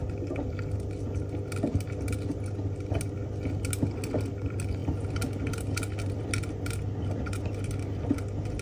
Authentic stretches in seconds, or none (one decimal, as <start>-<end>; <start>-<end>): 0.0-8.6